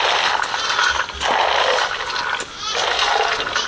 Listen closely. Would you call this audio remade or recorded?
recorded